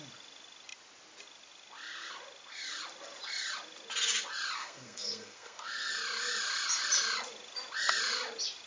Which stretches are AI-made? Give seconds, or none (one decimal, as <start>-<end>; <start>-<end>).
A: 4.6-5.9